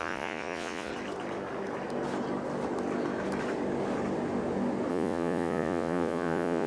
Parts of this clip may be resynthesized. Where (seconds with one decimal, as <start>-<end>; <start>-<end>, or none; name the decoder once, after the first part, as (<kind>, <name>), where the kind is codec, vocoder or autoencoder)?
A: 0.0-0.9 (vocoder, Vocos); 4.9-6.7